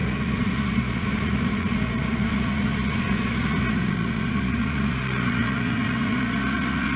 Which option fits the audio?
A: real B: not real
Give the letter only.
B